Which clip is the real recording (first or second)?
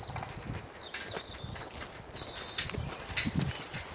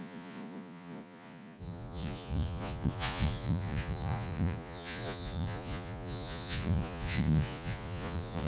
first